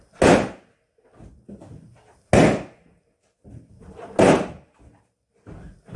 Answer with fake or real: real